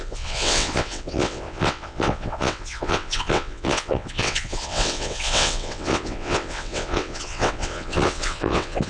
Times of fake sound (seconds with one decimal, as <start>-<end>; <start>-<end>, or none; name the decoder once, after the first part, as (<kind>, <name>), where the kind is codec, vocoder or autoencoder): 0.0-8.9 (vocoder, WaveNeXt)

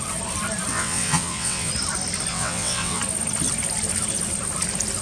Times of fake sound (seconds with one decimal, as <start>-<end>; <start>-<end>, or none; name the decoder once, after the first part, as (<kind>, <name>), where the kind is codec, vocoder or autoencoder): 0.7-1.7 (vocoder, WaveNeXt); 2.3-3.0

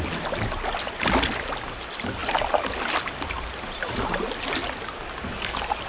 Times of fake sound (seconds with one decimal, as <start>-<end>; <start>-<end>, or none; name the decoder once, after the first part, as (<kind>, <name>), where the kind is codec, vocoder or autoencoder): none

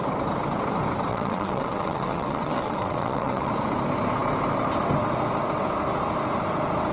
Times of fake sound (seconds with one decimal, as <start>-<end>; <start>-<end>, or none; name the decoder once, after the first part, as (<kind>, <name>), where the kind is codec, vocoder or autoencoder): 1.1-3.5 (vocoder, WaveNeXt)

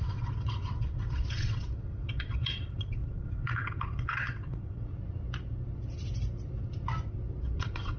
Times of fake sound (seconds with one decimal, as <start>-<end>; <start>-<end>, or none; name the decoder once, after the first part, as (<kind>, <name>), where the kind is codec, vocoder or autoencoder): 0.0-4.9 (vocoder, WaveNeXt); 7.4-8.0

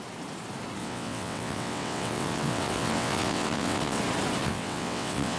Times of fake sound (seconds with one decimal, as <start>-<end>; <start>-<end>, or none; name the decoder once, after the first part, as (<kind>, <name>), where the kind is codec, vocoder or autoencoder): 0.8-4.0 (vocoder, WaveNeXt); 4.4-5.4